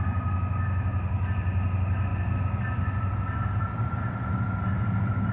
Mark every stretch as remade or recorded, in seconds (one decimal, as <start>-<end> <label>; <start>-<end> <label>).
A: 0.0-5.3 recorded